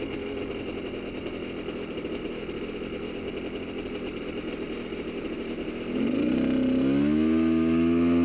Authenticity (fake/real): real